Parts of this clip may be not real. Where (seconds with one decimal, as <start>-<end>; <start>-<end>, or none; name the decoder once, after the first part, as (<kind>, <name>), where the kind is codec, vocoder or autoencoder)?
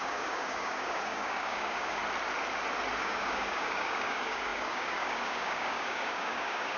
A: 0.0-2.0 (codec, DAC); 3.0-6.8